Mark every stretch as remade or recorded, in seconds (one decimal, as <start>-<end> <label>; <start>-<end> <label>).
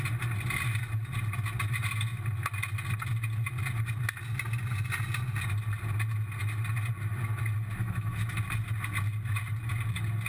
0.0-7.8 recorded; 7.8-8.4 remade; 8.4-10.3 recorded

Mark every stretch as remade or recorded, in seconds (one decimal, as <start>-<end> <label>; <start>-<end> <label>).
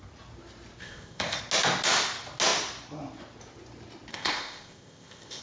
0.0-0.8 recorded; 0.8-1.4 remade; 1.4-4.1 recorded; 4.1-5.4 remade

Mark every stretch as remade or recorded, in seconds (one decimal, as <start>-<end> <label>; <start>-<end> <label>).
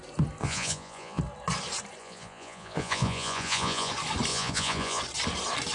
0.0-0.4 recorded; 0.4-1.2 remade; 1.2-2.0 recorded; 2.0-3.9 remade; 3.9-4.3 recorded; 4.3-5.0 remade; 5.0-5.7 recorded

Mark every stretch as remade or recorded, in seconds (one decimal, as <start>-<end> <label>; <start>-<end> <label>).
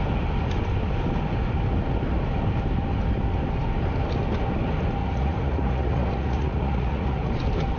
0.0-5.0 recorded; 5.0-7.3 remade; 7.3-7.8 recorded